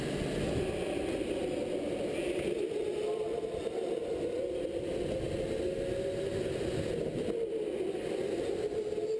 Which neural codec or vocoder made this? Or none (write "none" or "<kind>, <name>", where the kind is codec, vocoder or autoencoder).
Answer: none